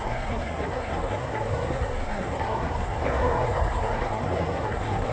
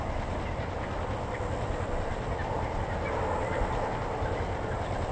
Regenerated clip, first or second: first